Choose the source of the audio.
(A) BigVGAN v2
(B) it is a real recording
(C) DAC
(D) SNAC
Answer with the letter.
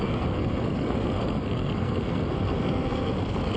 D